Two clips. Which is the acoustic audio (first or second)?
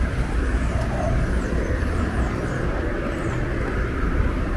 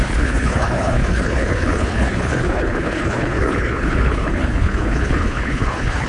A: first